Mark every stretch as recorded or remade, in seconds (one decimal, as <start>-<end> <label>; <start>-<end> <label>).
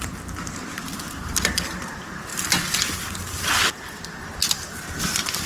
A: 0.0-5.5 recorded